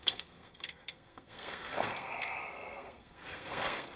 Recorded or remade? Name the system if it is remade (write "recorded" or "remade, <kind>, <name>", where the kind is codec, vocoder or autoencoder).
remade, codec, SNAC